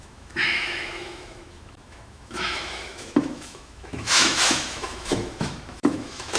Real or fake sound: fake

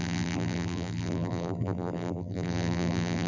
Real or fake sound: fake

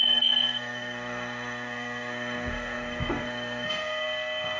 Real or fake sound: fake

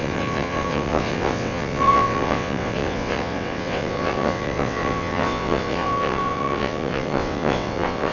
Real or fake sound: fake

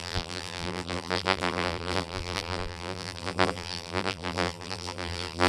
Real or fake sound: fake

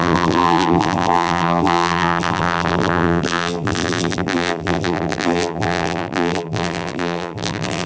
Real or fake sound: fake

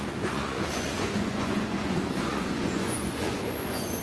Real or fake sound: fake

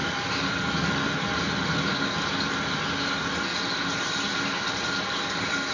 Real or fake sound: real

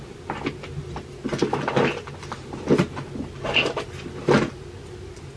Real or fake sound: real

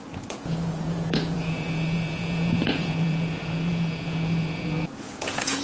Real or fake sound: fake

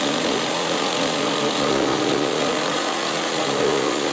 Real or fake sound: fake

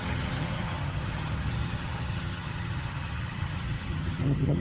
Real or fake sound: fake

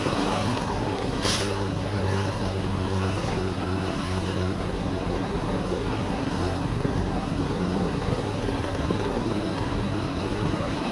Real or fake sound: fake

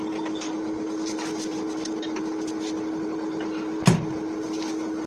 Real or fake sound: real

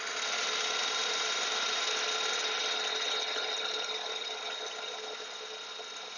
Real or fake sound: real